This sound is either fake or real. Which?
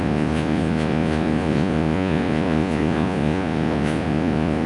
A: fake